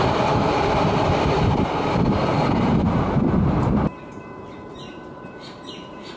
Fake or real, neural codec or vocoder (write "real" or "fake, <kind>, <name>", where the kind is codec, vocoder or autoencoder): fake, vocoder, BigVGAN v2